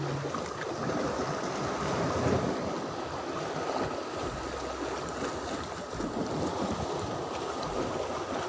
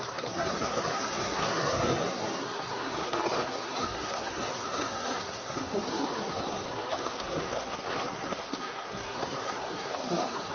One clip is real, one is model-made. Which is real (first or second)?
first